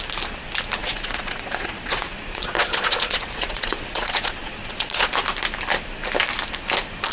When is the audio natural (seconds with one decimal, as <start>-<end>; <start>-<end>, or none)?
0.0-0.8; 5.1-7.1